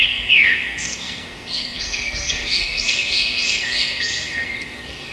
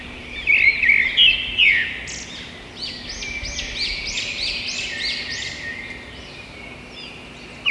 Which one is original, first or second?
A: second